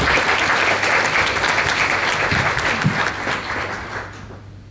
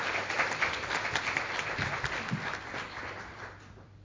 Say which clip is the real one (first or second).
first